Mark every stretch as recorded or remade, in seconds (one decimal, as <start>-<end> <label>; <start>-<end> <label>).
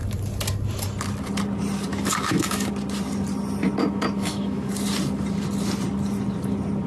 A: 0.0-1.9 recorded; 1.9-2.7 remade; 2.7-3.8 recorded; 3.8-4.7 remade; 4.7-6.9 recorded